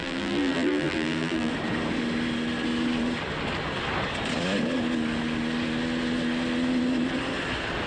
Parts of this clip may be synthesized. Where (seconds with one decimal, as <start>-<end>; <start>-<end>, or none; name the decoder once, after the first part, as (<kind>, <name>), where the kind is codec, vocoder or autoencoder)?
0.0-1.5 (vocoder, BigVGAN v2)